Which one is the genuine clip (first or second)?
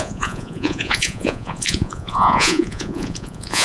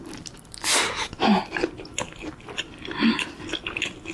second